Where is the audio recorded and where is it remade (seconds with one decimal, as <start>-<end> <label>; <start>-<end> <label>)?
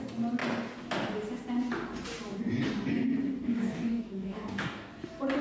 0.0-3.4 recorded; 3.4-4.9 remade; 4.9-5.4 recorded